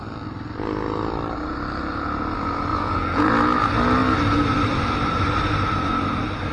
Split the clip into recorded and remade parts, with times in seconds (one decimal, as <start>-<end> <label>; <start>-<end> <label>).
0.0-2.7 recorded; 2.7-3.3 remade; 3.3-6.5 recorded